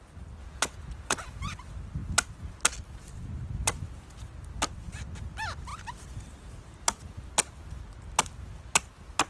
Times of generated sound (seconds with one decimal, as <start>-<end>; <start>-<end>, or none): 0.4-1.4